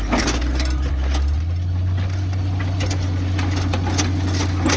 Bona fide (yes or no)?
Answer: yes